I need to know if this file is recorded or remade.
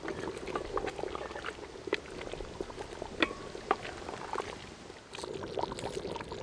recorded